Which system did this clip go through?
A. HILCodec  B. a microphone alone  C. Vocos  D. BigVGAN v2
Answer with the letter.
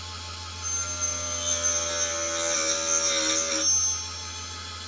B